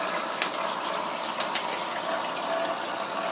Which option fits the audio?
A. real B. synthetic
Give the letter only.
A